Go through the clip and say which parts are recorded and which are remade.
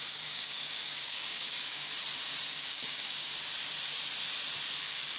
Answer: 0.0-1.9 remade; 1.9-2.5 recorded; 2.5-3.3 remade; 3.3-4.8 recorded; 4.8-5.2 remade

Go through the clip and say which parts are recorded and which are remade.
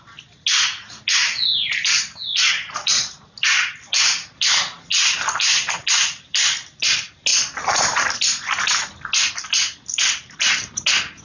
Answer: 0.0-11.2 recorded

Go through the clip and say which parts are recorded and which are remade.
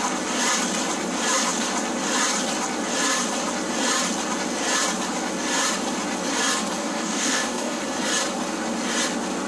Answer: 0.0-6.8 recorded; 6.8-7.8 remade; 7.8-9.5 recorded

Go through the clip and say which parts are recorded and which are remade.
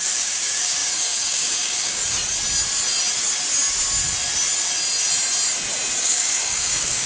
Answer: 0.0-2.0 remade; 2.0-6.0 recorded; 6.0-7.1 remade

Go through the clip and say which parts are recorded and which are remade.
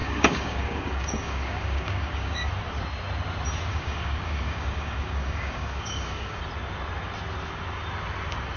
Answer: 0.0-2.5 remade; 2.5-3.7 recorded; 3.7-6.4 remade; 6.4-8.6 recorded